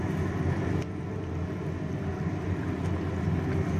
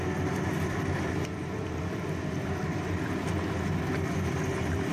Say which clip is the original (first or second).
first